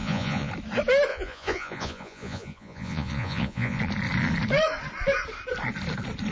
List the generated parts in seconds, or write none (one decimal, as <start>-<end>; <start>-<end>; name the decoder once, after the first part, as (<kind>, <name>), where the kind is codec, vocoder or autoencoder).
0.0-0.5 (vocoder, Vocos); 1.1-3.8